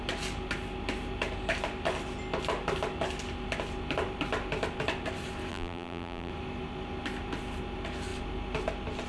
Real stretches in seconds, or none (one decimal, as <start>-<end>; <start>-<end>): 0.0-5.5; 6.3-9.1